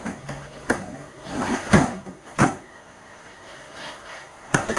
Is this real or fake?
fake